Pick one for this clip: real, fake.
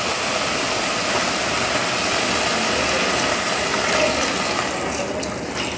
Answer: real